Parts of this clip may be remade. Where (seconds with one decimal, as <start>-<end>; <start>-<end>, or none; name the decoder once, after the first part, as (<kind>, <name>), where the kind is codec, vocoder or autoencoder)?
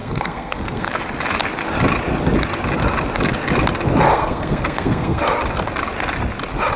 0.0-0.9 (codec, SNAC); 4.1-5.2